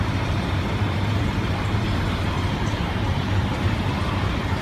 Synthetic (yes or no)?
yes